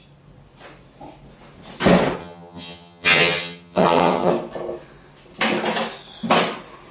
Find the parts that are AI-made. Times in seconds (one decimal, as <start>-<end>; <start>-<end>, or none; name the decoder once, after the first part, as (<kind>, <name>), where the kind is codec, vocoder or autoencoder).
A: 2.2-4.3 (vocoder, HiFi-GAN)